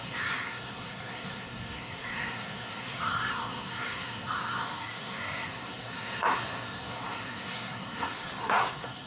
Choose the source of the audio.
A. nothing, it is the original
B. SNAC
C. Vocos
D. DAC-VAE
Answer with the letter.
B